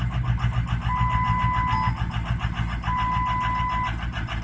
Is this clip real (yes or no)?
yes